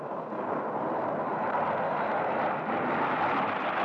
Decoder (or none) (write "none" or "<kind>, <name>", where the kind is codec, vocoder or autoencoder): none